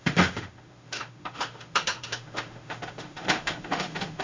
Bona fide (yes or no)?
no